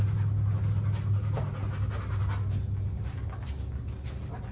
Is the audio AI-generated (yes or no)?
no